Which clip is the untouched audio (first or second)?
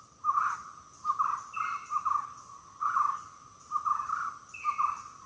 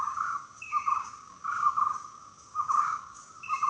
first